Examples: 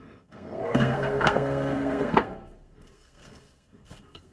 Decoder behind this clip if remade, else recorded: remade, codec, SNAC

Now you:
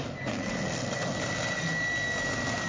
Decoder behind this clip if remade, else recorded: recorded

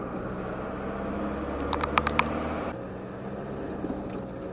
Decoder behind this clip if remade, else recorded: recorded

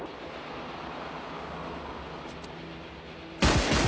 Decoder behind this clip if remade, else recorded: recorded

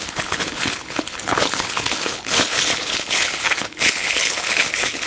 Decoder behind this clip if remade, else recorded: remade, codec, HILCodec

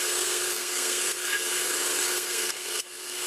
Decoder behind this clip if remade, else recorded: remade, codec, SNAC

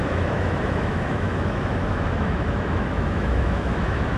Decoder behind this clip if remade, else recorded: remade, autoencoder, DAC-VAE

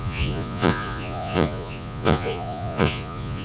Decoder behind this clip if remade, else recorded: remade, vocoder, Vocos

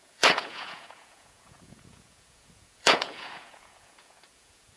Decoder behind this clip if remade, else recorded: remade, vocoder, Vocos